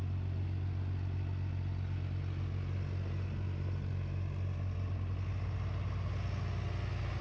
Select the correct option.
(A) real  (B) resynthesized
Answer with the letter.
A